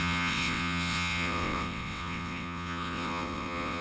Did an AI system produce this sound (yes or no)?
yes